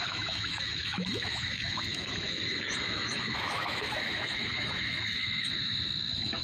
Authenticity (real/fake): fake